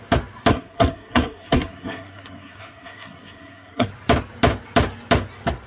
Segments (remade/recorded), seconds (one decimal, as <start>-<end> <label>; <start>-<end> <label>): 0.0-0.5 recorded; 0.5-3.9 remade; 3.9-5.7 recorded